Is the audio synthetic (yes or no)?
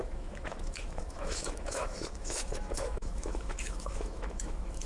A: yes